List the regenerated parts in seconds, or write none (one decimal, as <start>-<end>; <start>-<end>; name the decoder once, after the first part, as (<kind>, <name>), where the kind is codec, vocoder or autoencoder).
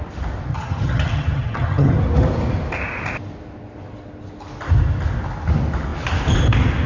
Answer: 0.5-2.0 (vocoder, HiFi-GAN)